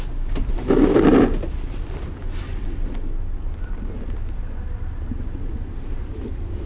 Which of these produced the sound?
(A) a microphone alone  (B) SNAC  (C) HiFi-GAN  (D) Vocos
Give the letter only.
A